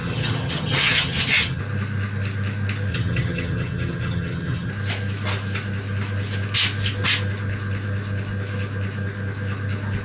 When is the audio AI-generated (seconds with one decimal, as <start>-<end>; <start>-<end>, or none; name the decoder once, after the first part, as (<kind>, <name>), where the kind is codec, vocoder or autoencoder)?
0.0-1.6 (vocoder, HiFi-GAN); 2.9-4.7

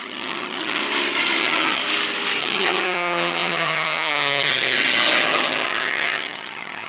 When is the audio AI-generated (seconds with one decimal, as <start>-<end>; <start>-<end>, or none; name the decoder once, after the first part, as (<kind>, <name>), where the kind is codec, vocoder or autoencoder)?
0.0-0.8 (vocoder, HiFi-GAN); 1.4-1.8; 2.4-6.9

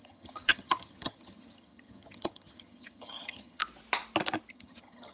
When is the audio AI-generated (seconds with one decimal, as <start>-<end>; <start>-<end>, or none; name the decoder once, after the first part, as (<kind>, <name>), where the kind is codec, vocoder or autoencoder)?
0.0-3.6 (vocoder, HiFi-GAN); 4.5-5.1